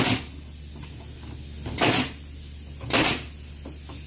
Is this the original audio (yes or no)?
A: yes